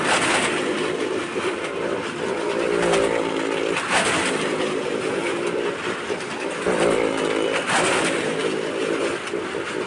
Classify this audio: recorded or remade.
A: recorded